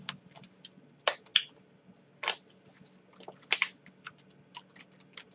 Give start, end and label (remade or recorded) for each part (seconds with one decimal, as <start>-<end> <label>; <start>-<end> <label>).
0.0-5.3 recorded